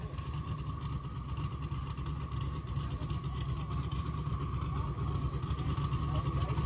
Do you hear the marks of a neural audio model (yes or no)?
no